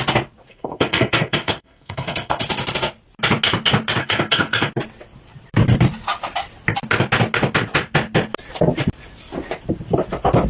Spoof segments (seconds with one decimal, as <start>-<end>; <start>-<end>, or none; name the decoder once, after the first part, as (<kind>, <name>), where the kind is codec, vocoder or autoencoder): 0.5-2.4 (codec, SNAC); 4.0-4.7